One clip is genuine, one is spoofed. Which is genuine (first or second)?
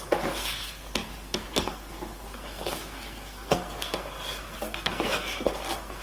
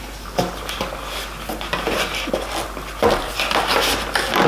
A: second